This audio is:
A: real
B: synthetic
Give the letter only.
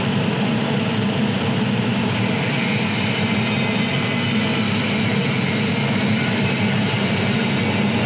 A